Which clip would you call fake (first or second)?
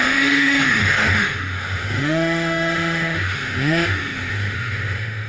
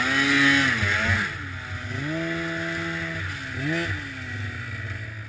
first